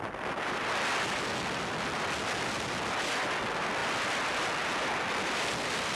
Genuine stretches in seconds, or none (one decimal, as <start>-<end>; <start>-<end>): 0.0-6.0